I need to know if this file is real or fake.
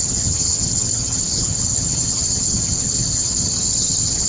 fake